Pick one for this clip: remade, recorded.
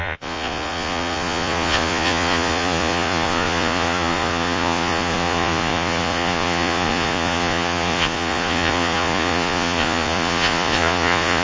remade